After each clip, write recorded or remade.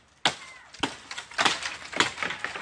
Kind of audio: recorded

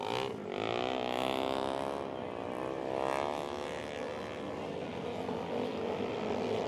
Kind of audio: recorded